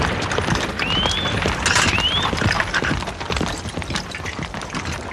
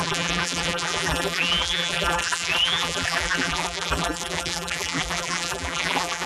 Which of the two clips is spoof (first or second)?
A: second